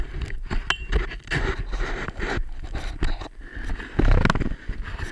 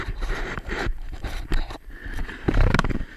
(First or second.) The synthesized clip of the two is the second